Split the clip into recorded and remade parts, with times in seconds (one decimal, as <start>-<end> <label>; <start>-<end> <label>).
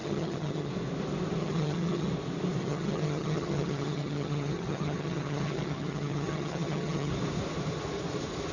0.0-0.7 remade; 0.7-1.4 recorded; 1.4-2.1 remade; 2.1-2.6 recorded; 2.6-7.1 remade; 7.1-8.5 recorded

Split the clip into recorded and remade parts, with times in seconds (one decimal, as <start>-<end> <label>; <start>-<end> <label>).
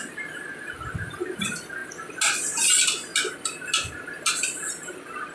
0.0-1.8 remade; 1.8-2.7 recorded; 2.7-3.1 remade; 3.1-4.3 recorded; 4.3-5.3 remade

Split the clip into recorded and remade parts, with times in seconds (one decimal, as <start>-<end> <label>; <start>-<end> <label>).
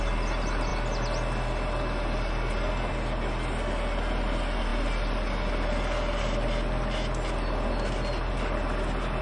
0.0-9.2 recorded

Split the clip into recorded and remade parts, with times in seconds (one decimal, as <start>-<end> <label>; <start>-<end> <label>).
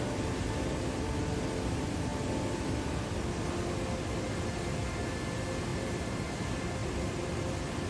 0.0-5.7 recorded; 5.7-6.3 remade; 6.3-6.8 recorded; 6.8-7.4 remade; 7.4-7.9 recorded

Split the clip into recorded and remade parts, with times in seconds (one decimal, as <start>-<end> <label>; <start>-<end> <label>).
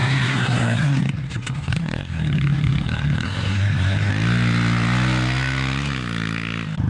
0.0-4.1 remade; 4.1-6.9 recorded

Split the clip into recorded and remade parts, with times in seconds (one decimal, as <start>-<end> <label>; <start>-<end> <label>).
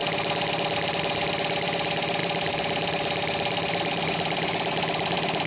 0.0-5.5 recorded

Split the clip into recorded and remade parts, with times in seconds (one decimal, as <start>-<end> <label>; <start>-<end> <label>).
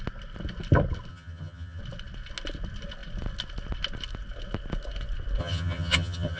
0.0-1.1 recorded; 1.1-1.8 remade; 1.8-5.4 recorded; 5.4-6.4 remade